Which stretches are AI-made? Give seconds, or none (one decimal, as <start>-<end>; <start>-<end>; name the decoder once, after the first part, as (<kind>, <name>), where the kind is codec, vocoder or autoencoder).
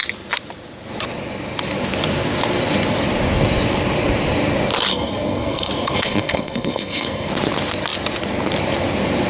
4.9-7.3 (codec, SNAC)